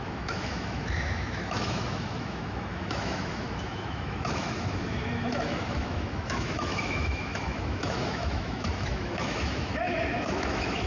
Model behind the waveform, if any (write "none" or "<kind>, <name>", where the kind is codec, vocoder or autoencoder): autoencoder, DAC-VAE